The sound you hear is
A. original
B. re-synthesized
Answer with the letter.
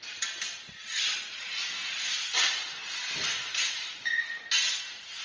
A